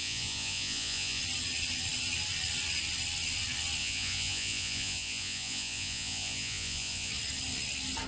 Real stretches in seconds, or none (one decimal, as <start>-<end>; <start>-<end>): 1.2-3.8; 7.1-8.1